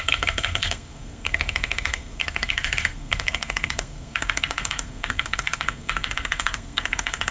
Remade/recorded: remade